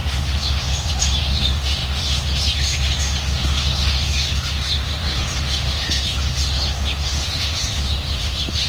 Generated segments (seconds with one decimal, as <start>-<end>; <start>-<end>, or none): 0.0-8.7